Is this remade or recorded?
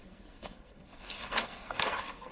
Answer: remade